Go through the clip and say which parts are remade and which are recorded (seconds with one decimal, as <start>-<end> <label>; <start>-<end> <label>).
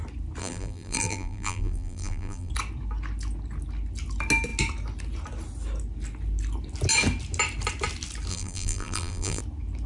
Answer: 0.0-0.4 recorded; 0.4-2.5 remade; 2.5-8.3 recorded; 8.3-9.4 remade; 9.4-9.9 recorded